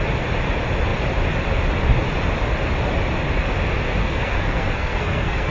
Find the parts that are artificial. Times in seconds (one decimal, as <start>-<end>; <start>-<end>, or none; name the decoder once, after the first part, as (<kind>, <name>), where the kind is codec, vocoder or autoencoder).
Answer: 4.0-5.5 (codec, SNAC)